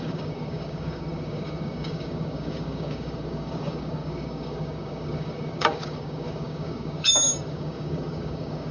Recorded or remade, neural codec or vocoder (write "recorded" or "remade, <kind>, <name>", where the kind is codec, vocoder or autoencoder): remade, codec, DAC